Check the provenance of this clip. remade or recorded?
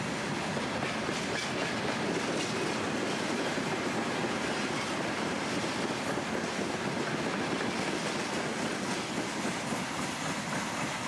recorded